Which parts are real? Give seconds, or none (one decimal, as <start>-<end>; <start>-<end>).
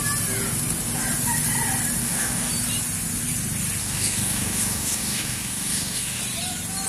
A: 0.0-2.0; 2.5-3.8; 6.2-6.9